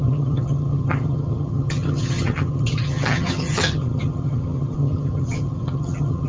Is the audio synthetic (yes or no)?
yes